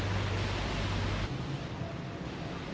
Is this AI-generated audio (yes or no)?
no